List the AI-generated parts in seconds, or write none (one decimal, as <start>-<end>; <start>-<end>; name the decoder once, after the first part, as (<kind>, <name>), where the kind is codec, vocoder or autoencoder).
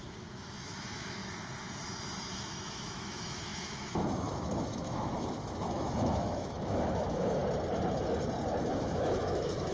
0.0-1.2 (autoencoder, DAC-VAE); 2.4-7.4; 8.6-9.7